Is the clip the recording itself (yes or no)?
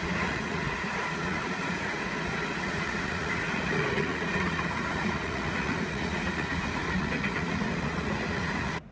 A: no